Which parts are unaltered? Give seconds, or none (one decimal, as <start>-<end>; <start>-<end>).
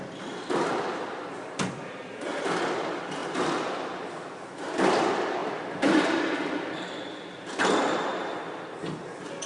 3.2-4.9; 8.1-8.8